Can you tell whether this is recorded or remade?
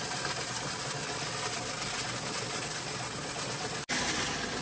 recorded